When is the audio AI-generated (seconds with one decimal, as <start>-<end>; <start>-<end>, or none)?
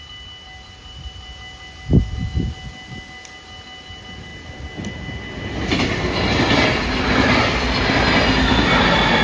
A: none